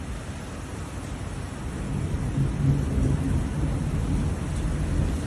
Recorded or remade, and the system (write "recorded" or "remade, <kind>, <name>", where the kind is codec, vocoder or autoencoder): recorded